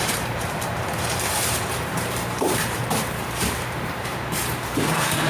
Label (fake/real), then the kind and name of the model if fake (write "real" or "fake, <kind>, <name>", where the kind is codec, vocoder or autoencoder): fake, vocoder, BigVGAN v2